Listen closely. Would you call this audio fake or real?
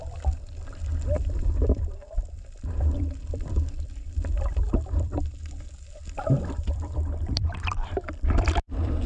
fake